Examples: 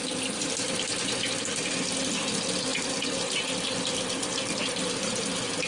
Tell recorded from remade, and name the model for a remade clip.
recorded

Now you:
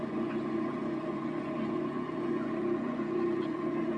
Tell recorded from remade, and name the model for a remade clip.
remade, vocoder, Vocos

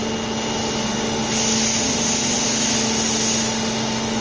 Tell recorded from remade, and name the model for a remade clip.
recorded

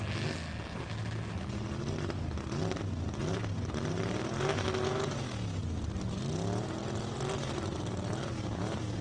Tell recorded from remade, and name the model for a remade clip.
recorded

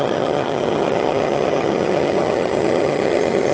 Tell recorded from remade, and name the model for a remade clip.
remade, vocoder, HiFi-GAN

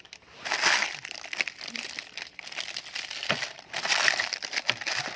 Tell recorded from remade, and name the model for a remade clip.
remade, vocoder, BigVGAN v2